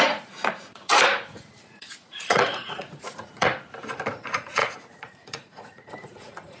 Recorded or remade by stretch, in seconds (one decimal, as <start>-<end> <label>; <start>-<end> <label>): 0.0-0.9 remade; 0.9-1.6 recorded; 1.6-3.5 remade; 3.5-4.1 recorded; 4.1-6.6 remade